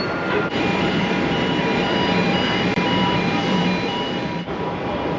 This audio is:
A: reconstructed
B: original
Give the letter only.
A